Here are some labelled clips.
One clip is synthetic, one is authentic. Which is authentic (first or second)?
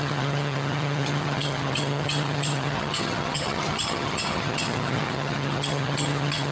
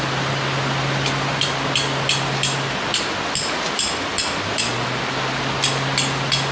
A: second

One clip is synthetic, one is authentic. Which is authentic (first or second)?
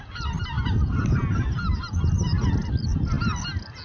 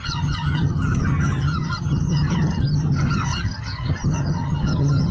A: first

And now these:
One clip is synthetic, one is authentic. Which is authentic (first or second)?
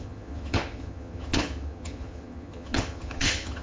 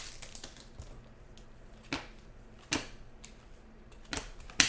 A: second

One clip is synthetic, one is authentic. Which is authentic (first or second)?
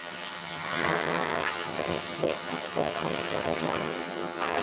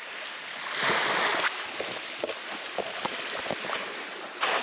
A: second